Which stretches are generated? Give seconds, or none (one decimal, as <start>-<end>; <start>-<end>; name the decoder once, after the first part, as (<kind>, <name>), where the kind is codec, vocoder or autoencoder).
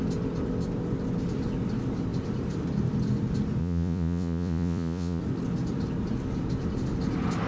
3.6-5.2 (vocoder, Vocos)